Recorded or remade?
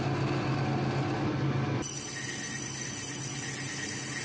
recorded